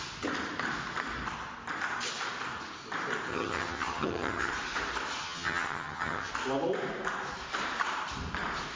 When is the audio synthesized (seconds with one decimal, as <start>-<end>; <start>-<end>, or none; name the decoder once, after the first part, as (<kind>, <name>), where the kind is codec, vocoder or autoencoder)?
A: 3.3-4.5 (vocoder, HiFi-GAN); 5.2-6.3